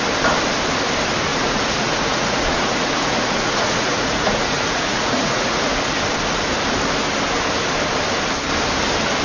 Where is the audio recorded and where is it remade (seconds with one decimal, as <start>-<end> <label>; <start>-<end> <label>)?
0.0-1.3 recorded; 1.3-5.7 remade; 5.7-9.2 recorded